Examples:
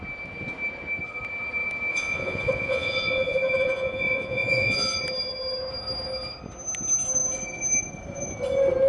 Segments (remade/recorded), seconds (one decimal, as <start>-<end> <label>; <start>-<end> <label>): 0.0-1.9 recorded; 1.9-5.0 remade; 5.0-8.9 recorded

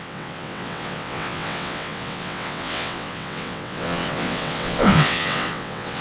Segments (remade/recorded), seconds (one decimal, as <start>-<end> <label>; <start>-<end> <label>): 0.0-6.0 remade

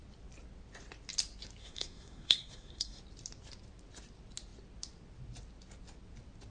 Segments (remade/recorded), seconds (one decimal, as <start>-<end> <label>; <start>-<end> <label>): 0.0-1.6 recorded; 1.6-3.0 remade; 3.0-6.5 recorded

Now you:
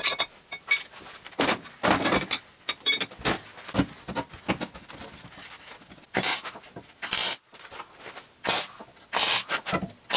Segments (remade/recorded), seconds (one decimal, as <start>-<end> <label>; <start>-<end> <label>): 0.0-10.2 recorded

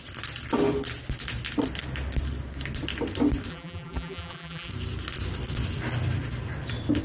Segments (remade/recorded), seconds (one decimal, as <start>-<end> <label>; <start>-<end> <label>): 0.0-3.5 recorded; 3.5-4.7 remade; 4.7-7.0 recorded

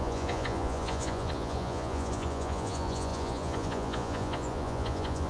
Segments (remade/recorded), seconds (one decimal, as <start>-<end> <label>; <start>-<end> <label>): 0.0-5.3 remade

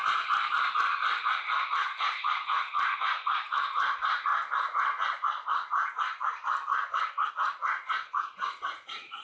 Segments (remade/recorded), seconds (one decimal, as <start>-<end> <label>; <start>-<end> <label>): 0.0-1.7 recorded; 1.7-4.3 remade; 4.3-7.3 recorded; 7.3-9.2 remade

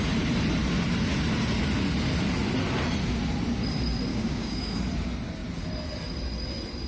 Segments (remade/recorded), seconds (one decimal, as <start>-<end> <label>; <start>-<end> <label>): 0.0-4.1 recorded; 4.1-4.8 remade; 4.8-6.9 recorded